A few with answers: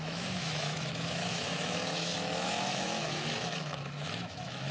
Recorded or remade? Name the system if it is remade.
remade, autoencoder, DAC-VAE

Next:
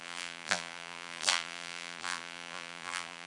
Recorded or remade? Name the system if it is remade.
remade, vocoder, BigVGAN v2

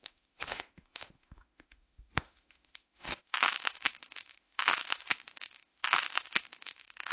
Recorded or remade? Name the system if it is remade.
remade, autoencoder, DAC-VAE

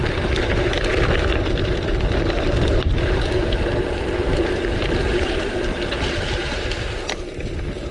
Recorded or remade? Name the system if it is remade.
remade, vocoder, BigVGAN v2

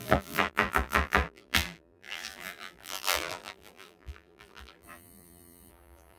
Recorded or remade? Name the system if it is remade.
remade, vocoder, BigVGAN v2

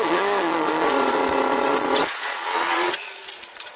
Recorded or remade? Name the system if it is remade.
remade, vocoder, Vocos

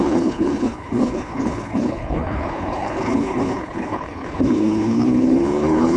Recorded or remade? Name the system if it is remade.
remade, codec, HILCodec